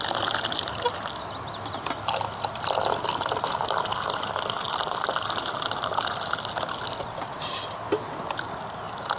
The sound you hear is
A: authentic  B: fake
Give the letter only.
A